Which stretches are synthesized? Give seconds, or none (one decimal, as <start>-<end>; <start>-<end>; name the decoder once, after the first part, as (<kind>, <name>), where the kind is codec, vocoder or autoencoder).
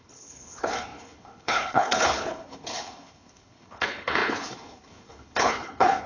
0.0-6.1 (codec, HILCodec)